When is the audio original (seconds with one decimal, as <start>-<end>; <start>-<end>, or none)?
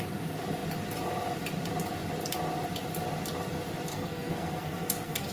0.0-3.9